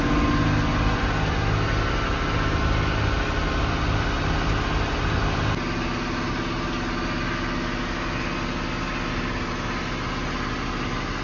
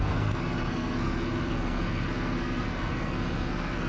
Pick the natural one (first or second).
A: first